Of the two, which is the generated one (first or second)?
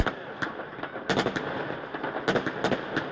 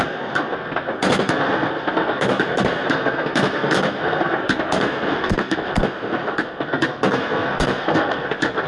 second